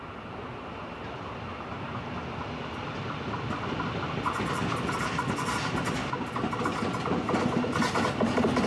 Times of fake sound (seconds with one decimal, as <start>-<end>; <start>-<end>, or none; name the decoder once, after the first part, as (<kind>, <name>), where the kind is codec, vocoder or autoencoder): none